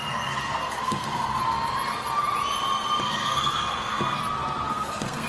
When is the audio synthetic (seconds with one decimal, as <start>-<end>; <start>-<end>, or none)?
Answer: 0.0-1.4; 3.0-4.2; 4.7-5.3